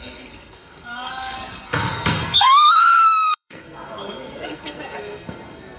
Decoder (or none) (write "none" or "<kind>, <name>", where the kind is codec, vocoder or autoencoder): codec, SNAC